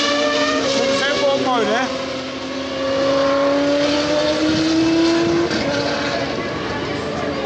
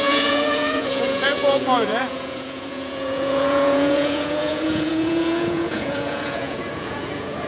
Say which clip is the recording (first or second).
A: first